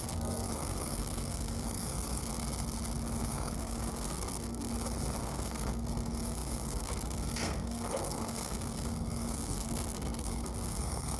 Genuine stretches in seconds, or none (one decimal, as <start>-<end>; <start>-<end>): 2.3-3.2; 4.7-5.2